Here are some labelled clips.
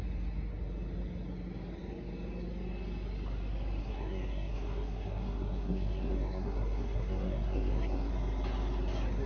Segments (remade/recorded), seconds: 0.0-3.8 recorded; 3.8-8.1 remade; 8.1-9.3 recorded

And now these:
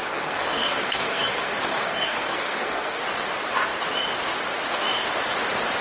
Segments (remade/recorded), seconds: 0.0-3.0 remade; 3.0-5.8 recorded

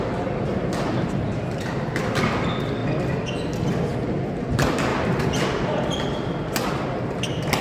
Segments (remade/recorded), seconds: 0.0-7.6 recorded

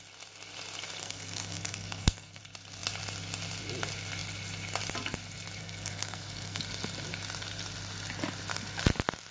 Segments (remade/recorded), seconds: 0.0-1.0 recorded; 1.0-2.4 remade; 2.4-5.6 recorded; 5.6-6.6 remade; 6.6-9.3 recorded

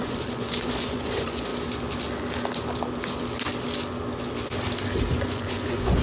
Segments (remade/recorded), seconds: 0.0-1.5 remade; 1.5-5.1 recorded; 5.1-6.0 remade

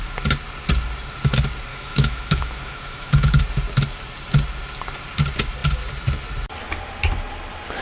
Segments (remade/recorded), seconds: 0.0-1.7 recorded; 1.7-3.3 remade; 3.3-7.8 recorded